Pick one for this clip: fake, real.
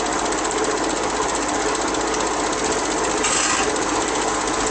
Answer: real